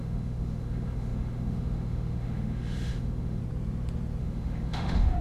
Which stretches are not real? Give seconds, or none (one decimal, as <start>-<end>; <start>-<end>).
0.0-3.4; 4.2-5.2